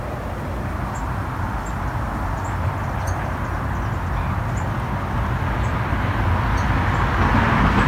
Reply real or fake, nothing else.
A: real